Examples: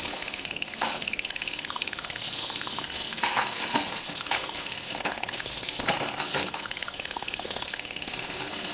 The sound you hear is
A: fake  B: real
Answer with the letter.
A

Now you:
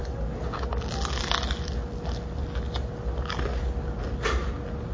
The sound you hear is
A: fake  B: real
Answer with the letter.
B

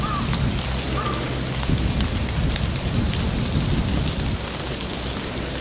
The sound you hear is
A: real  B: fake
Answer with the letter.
A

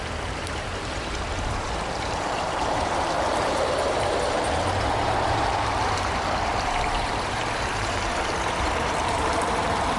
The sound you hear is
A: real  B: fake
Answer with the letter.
B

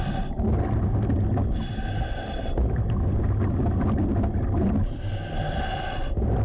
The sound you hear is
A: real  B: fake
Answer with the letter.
A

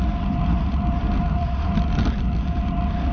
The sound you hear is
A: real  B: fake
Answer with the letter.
A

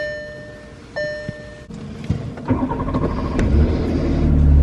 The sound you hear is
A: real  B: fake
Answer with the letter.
A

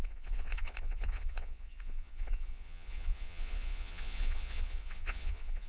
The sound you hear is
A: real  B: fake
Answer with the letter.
B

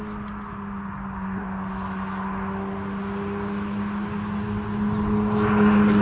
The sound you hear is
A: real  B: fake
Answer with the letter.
A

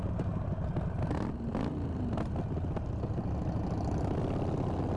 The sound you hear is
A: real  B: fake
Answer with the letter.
A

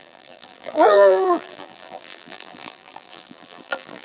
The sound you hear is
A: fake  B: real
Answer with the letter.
A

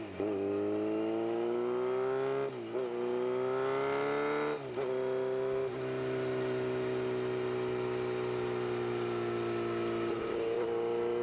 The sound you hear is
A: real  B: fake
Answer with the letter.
A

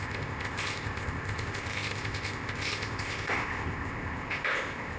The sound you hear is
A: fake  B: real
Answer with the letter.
A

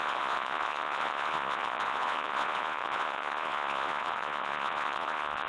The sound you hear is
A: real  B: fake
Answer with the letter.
B